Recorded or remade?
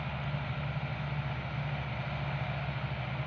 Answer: recorded